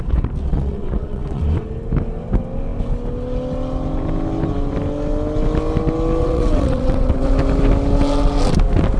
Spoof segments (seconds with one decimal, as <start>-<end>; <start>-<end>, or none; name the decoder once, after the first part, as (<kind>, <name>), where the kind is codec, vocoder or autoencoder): 0.5-1.4 (vocoder, WaveNeXt); 6.2-7.3